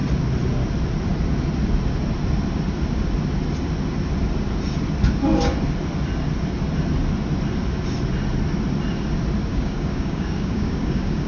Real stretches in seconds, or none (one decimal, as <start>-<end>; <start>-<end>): 0.0-9.5